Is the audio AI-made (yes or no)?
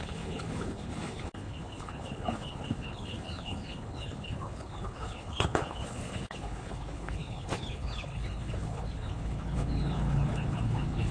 yes